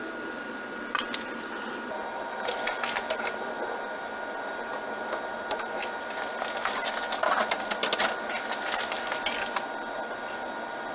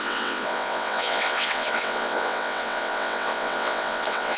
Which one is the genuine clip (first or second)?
first